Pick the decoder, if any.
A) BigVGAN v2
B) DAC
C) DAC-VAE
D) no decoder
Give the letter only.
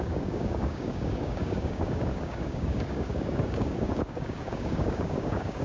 B